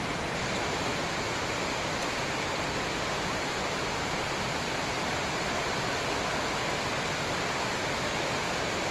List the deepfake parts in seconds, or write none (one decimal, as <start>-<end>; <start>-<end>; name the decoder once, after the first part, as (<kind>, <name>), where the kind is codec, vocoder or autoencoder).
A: 0.9-1.5 (vocoder, BigVGAN v2)

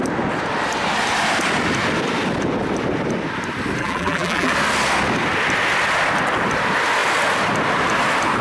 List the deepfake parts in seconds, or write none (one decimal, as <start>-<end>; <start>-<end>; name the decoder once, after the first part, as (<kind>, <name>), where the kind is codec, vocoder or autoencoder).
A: 3.8-4.5 (vocoder, BigVGAN v2)

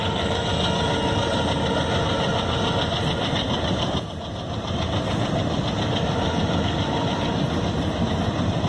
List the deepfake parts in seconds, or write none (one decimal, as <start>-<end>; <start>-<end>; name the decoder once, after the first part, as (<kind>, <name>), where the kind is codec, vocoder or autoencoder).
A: 2.3-4.1 (vocoder, BigVGAN v2)

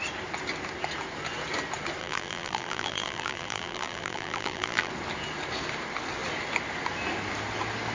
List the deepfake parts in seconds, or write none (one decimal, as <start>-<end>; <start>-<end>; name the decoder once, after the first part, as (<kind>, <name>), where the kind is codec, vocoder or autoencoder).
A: 2.0-4.9 (vocoder, BigVGAN v2)

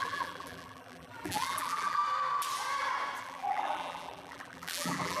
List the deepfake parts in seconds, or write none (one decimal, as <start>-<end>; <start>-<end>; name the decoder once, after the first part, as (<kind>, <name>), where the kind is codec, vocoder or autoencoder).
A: 0.0-2.0 (vocoder, BigVGAN v2); 3.2-5.2

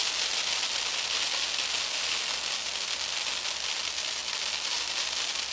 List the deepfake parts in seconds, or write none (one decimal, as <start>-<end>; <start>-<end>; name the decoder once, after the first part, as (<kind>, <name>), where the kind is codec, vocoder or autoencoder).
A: none

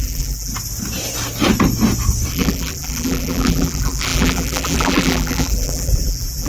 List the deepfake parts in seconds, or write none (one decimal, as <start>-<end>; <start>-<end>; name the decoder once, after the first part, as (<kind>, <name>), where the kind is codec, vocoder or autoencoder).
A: 0.0-0.5 (vocoder, BigVGAN v2); 2.3-6.5